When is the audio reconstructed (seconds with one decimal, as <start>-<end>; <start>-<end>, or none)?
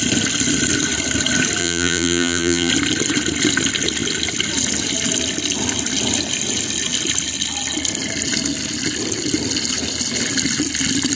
1.6-2.7